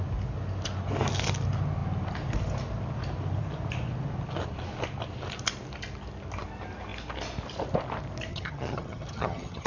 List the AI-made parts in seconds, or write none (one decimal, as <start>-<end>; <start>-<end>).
8.3-9.7